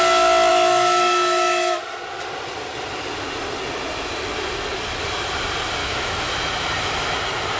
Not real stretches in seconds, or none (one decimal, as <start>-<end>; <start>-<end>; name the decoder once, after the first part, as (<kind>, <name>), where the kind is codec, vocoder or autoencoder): 0.5-1.8 (autoencoder, DAC-VAE); 5.8-6.3